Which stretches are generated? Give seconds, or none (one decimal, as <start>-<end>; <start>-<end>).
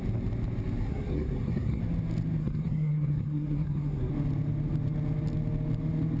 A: 0.8-1.8; 2.4-4.1